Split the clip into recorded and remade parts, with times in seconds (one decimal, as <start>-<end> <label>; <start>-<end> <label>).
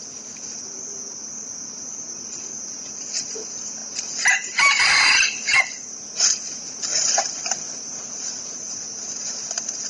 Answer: 0.0-9.9 remade